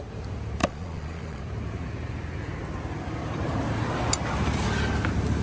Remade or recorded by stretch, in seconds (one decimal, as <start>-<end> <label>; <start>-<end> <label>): 0.0-0.6 recorded; 0.6-1.4 remade; 1.4-5.4 recorded